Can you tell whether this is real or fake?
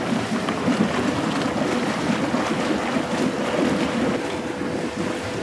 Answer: real